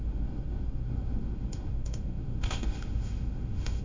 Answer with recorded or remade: remade